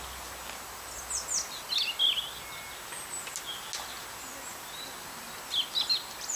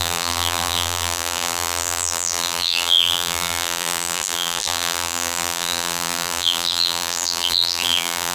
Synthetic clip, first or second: second